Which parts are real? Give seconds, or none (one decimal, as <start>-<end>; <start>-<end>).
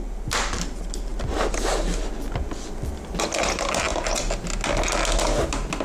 0.0-5.8